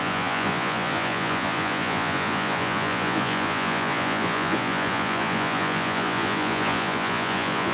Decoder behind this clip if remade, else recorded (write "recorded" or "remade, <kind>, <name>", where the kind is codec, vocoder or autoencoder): remade, vocoder, Vocos